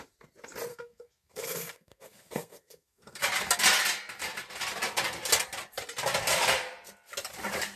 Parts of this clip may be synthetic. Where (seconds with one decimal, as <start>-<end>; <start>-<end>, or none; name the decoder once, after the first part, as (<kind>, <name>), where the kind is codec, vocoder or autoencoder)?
0.7-3.2 (codec, SNAC)